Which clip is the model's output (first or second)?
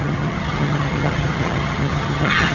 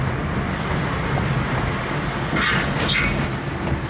first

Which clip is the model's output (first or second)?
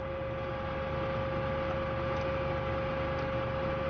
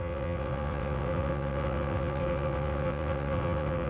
second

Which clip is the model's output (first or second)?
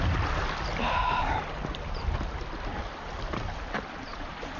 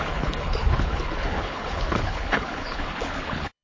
second